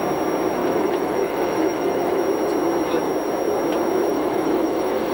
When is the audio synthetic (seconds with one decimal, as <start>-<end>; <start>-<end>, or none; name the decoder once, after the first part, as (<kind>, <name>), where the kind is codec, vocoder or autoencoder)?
0.6-2.2 (autoencoder, DAC-VAE); 4.1-5.1